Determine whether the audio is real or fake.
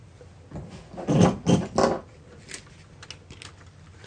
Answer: real